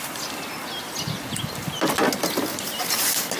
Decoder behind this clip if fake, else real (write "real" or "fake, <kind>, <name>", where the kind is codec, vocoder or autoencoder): real